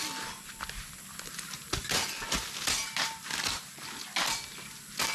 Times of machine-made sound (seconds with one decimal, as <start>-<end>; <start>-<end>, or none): none